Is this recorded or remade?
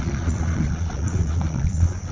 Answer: remade